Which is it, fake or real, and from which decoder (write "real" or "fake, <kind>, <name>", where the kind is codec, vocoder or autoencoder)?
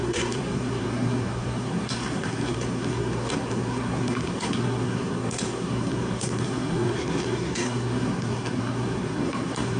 fake, codec, SNAC